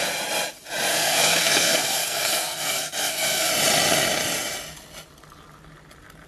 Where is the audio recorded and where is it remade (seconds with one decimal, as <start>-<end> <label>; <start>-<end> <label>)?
0.0-0.9 recorded; 0.9-3.5 remade; 3.5-6.3 recorded

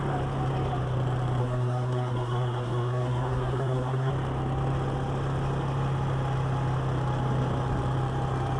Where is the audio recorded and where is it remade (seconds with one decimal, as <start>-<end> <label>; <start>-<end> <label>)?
0.0-1.4 recorded; 1.4-4.1 remade; 4.1-8.6 recorded

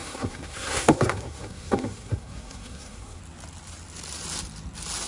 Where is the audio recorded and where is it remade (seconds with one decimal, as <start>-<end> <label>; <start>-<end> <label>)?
0.0-3.2 remade; 3.2-5.1 recorded

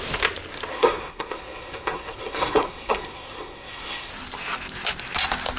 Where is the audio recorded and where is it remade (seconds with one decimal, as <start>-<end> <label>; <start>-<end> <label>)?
0.0-0.7 recorded; 0.7-4.1 remade; 4.1-5.6 recorded

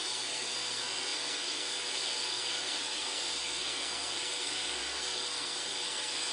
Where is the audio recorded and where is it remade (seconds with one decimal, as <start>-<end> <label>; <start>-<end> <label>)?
0.0-6.3 remade

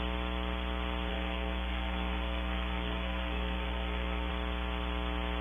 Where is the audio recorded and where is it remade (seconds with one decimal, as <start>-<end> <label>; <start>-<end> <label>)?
0.0-1.1 recorded; 1.1-4.3 remade; 4.3-5.4 recorded